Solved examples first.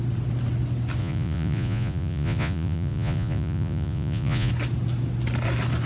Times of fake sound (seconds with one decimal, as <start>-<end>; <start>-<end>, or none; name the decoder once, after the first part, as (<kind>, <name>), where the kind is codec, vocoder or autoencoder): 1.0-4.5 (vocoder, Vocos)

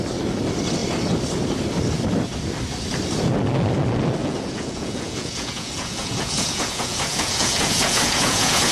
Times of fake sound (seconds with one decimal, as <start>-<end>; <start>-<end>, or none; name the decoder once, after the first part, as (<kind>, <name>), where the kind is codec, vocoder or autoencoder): 4.2-8.7 (vocoder, Vocos)

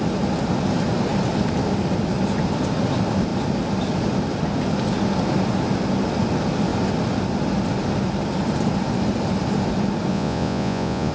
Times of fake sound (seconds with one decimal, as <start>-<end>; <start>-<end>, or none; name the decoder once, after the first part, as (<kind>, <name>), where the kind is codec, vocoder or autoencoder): 10.1-11.1 (vocoder, Vocos)